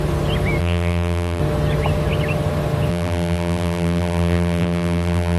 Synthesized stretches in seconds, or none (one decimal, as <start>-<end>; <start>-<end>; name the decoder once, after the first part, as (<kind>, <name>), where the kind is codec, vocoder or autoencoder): 0.6-1.4 (vocoder, BigVGAN v2); 2.9-5.4